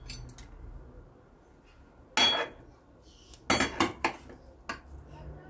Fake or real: real